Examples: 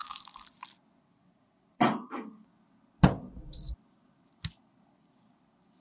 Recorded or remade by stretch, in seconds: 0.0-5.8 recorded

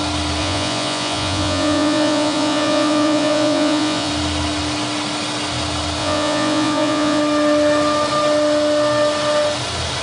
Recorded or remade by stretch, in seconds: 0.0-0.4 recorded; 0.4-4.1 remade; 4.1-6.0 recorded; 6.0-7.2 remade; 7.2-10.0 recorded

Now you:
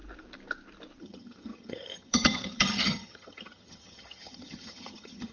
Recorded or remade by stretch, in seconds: 0.0-1.0 recorded; 1.0-5.3 remade

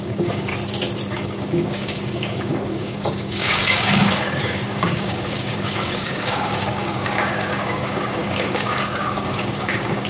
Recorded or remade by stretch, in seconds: 0.0-0.5 remade; 0.5-1.1 recorded; 1.1-10.1 remade

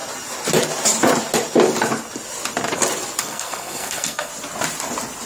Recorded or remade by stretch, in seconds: 0.0-3.2 recorded; 3.2-4.3 remade; 4.3-5.3 recorded

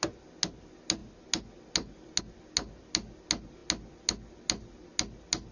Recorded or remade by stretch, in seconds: 0.0-5.5 recorded

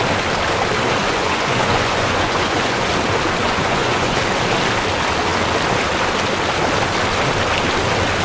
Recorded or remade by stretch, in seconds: 0.0-1.0 recorded; 1.0-2.9 remade; 2.9-3.4 recorded; 3.4-4.2 remade; 4.2-8.2 recorded